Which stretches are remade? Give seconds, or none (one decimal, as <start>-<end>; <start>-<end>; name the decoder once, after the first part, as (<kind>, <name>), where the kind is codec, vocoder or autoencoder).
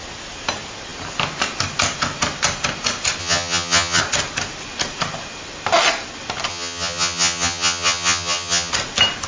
3.2-4.0 (vocoder, HiFi-GAN); 6.5-8.7